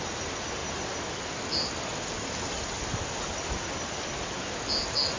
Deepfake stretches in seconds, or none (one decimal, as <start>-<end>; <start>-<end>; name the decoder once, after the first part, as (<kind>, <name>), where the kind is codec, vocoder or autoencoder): none